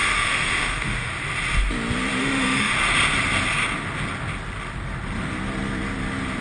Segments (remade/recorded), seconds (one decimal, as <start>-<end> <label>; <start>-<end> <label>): 0.0-1.1 remade; 1.1-2.2 recorded; 2.2-2.7 remade; 2.7-6.4 recorded